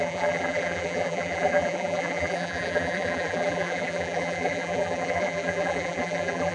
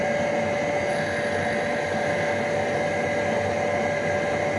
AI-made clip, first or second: first